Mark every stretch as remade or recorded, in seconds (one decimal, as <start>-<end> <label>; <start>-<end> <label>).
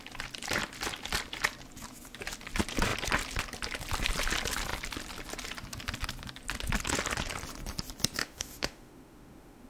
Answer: 0.0-8.2 recorded; 8.2-9.7 remade